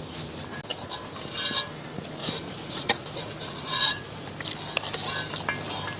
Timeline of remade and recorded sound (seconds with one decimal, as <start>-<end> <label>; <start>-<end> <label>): 0.0-2.2 recorded; 2.2-4.3 remade; 4.3-6.0 recorded